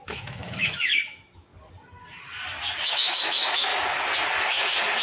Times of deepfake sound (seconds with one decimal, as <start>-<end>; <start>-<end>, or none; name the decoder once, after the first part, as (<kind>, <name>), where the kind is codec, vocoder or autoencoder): 0.0-1.5 (autoencoder, DAC-VAE); 2.8-3.7